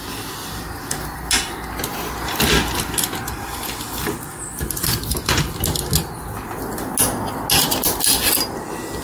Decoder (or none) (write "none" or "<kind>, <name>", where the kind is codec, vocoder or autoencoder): none